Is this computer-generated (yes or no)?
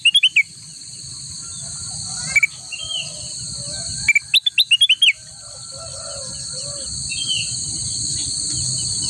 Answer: no